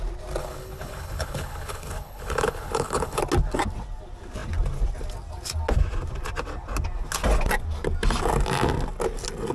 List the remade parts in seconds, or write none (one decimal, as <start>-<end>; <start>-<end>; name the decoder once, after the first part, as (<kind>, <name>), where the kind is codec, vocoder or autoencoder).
0.4-3.2 (codec, HILCodec)